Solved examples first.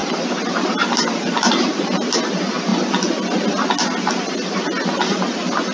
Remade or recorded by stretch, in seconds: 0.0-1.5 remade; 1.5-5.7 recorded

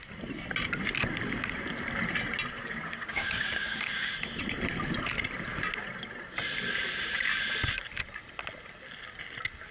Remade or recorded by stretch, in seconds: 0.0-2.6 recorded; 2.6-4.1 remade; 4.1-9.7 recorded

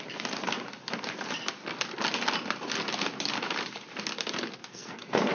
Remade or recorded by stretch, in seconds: 0.0-4.6 recorded; 4.6-5.3 remade